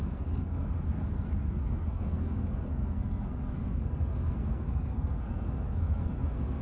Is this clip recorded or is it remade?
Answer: remade